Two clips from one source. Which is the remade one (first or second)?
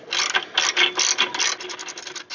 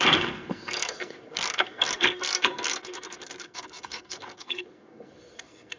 second